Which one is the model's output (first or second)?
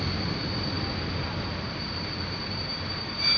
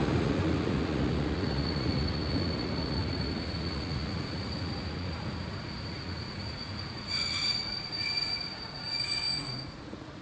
second